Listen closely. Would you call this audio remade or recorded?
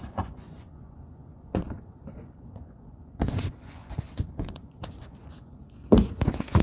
remade